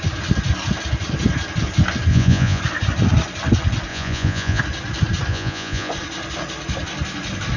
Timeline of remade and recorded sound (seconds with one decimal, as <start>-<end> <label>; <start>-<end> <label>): 0.0-2.1 recorded; 2.1-2.6 remade; 2.6-3.9 recorded; 3.9-4.6 remade; 4.6-5.3 recorded; 5.3-5.9 remade; 5.9-7.6 recorded